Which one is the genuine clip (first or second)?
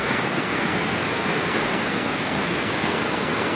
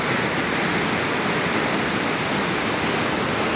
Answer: second